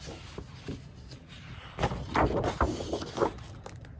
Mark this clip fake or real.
real